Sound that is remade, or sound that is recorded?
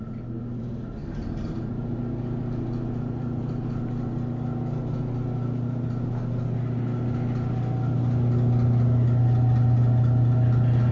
recorded